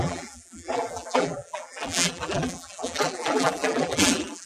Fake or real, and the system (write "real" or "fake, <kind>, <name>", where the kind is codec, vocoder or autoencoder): fake, vocoder, BigVGAN v2